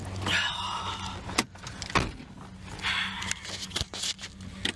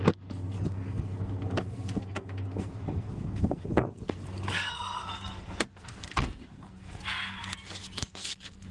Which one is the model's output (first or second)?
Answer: second